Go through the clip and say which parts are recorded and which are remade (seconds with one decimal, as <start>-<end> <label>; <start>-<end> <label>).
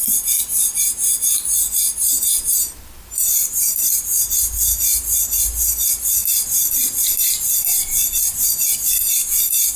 0.0-9.8 recorded